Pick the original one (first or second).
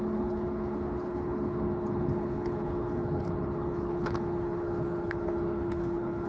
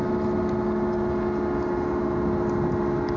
second